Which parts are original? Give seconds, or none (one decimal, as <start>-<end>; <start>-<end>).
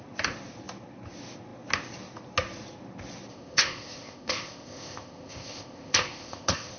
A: 0.0-3.3